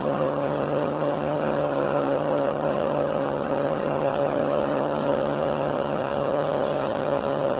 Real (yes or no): no